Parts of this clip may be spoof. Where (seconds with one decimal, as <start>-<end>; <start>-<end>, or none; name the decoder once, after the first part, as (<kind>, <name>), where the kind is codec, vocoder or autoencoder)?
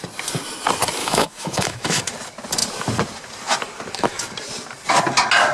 1.0-2.0 (autoencoder, DAC-VAE)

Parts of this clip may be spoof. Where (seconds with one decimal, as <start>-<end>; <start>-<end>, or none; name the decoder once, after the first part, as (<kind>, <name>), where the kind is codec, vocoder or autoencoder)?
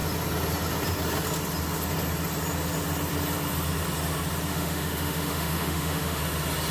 4.5-6.2 (autoencoder, DAC-VAE)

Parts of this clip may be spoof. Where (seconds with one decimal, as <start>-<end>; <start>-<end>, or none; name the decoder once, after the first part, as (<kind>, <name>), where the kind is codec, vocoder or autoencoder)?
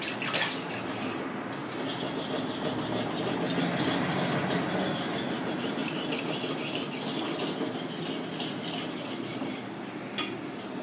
none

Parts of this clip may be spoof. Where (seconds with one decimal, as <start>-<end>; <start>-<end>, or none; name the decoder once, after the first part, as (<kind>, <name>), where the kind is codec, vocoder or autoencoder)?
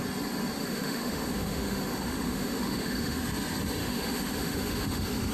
0.6-3.2 (autoencoder, DAC-VAE); 3.8-5.3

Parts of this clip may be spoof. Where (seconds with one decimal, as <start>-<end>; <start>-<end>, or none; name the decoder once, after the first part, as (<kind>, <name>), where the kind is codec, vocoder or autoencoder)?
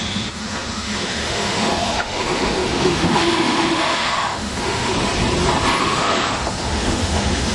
0.0-4.9 (autoencoder, DAC-VAE); 5.8-7.5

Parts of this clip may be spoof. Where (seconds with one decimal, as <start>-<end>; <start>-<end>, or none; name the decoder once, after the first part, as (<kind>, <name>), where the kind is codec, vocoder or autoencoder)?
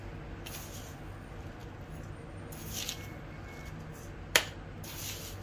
none